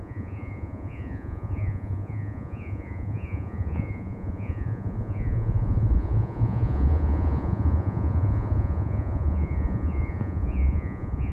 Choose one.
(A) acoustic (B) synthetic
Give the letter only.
B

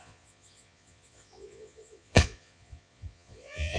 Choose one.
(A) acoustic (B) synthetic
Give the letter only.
B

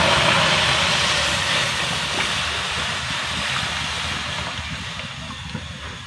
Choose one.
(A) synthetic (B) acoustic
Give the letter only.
B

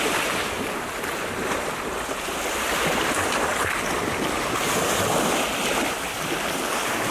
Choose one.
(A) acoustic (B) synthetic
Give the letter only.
A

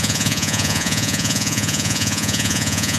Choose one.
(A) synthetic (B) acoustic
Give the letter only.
A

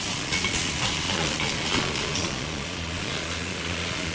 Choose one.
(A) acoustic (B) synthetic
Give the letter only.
B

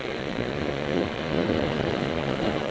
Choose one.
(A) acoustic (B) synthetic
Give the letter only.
B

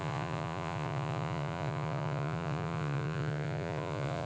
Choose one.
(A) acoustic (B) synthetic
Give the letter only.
B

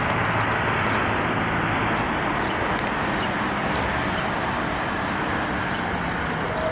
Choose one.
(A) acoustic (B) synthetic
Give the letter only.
A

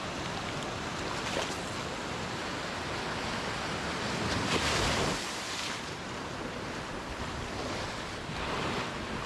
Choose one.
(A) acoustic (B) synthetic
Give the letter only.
A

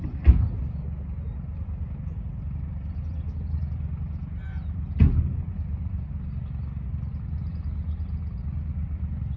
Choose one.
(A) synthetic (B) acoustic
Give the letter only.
B